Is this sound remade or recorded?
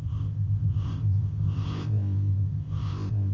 remade